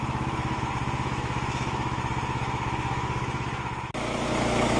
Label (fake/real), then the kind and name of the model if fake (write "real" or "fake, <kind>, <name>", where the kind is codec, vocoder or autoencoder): fake, autoencoder, DAC-VAE